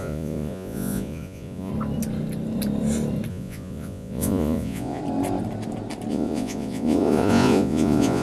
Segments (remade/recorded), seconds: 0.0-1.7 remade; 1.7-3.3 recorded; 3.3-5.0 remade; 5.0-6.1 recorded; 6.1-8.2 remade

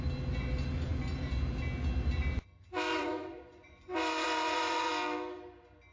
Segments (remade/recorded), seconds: 0.0-2.9 recorded; 2.9-4.9 remade; 4.9-5.9 recorded

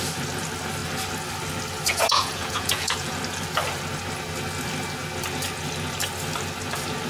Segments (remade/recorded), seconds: 0.0-1.9 recorded; 1.9-3.2 remade; 3.2-7.1 recorded

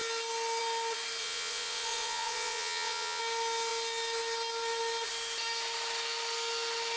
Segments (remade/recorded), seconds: 0.0-1.2 recorded; 1.2-3.2 remade; 3.2-7.0 recorded

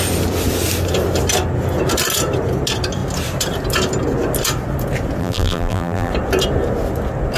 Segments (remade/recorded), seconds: 0.0-5.2 recorded; 5.2-6.1 remade; 6.1-7.4 recorded

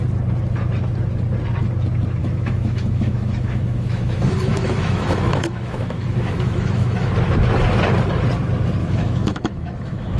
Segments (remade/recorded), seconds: 0.0-2.2 recorded; 2.2-7.1 remade; 7.1-8.8 recorded; 8.8-10.2 remade